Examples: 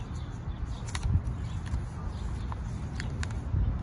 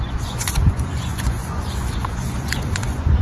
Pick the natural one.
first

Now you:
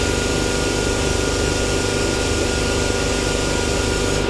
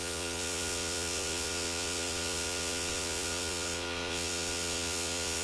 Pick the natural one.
first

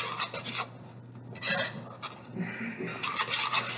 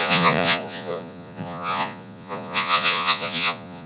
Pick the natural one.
first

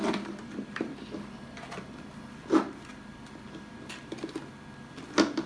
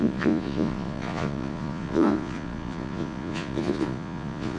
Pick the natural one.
first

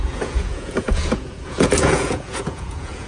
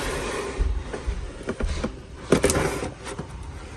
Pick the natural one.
second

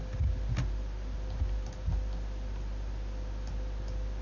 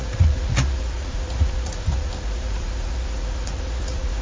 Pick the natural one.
first